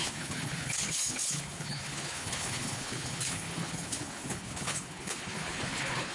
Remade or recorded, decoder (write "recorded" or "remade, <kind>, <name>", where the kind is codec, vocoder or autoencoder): remade, codec, HILCodec